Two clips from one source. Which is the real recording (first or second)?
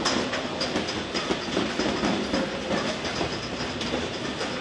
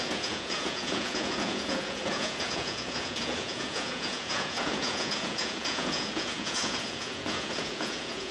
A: first